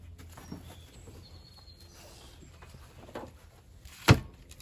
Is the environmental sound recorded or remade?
recorded